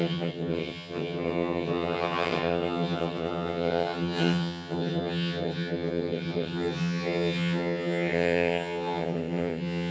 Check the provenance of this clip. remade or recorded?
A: remade